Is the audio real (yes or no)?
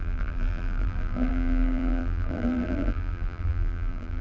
no